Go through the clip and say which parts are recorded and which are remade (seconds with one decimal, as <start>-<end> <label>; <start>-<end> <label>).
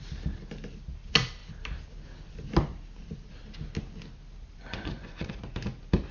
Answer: 0.0-4.6 recorded; 4.6-5.3 remade; 5.3-6.1 recorded